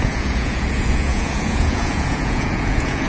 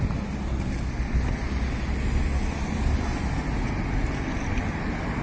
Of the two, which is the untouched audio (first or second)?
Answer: second